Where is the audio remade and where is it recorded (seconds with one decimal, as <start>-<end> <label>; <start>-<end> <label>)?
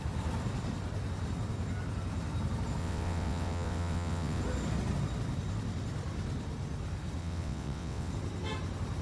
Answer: 0.0-2.8 recorded; 2.8-4.4 remade; 4.4-7.2 recorded; 7.2-8.1 remade; 8.1-9.0 recorded